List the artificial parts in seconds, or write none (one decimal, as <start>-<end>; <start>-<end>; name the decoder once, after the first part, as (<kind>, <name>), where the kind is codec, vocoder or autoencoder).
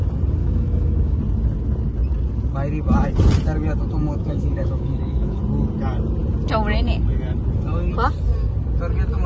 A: 0.4-1.2 (autoencoder, DAC-VAE); 4.0-5.4